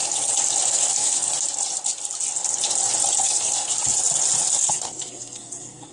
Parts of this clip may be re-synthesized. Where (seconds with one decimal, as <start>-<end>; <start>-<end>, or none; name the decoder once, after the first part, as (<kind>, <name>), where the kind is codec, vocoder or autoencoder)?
0.7-1.3 (codec, SNAC); 3.2-3.8; 4.7-5.9